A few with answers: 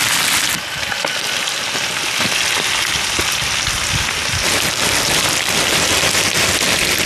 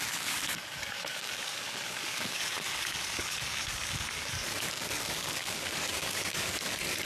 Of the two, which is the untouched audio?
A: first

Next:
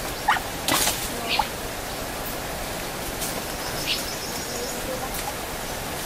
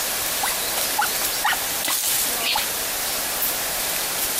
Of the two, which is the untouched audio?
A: first